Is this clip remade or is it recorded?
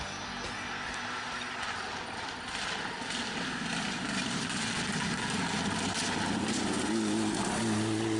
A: recorded